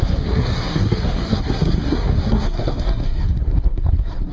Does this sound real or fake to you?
fake